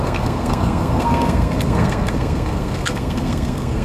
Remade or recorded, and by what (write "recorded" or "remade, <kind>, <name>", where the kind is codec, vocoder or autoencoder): remade, codec, SNAC